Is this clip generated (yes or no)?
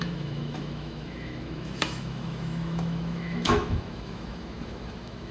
yes